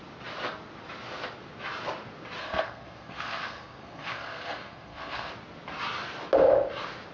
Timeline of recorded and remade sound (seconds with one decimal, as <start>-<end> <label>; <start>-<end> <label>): 0.0-2.4 recorded; 2.4-5.3 remade; 5.3-7.1 recorded